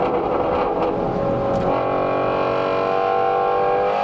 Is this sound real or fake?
real